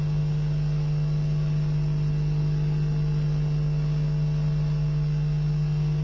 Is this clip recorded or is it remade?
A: recorded